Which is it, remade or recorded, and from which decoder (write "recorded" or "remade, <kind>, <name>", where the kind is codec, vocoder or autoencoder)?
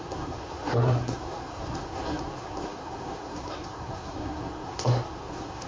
remade, codec, SNAC